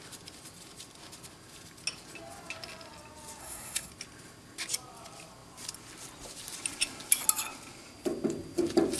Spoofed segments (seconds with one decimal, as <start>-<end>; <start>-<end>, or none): 3.4-3.9